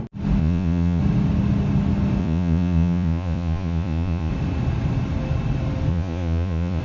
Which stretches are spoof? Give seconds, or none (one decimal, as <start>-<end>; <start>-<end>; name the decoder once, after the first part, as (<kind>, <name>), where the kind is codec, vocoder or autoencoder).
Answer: 0.4-1.0 (vocoder, Vocos); 2.2-4.3; 5.9-6.8